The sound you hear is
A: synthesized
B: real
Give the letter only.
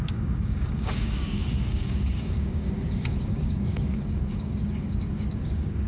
A